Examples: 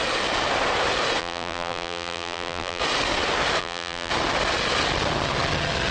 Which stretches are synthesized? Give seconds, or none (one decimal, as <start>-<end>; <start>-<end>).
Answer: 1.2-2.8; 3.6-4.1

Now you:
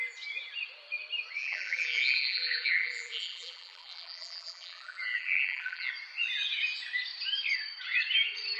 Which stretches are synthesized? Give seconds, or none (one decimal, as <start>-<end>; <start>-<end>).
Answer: 1.4-5.9

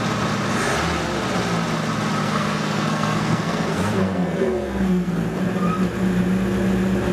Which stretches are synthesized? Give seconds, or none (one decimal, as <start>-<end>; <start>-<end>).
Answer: 2.2-5.4

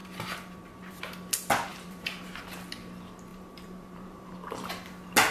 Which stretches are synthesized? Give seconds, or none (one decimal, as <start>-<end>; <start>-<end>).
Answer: 0.0-1.0; 1.7-2.3; 3.3-4.3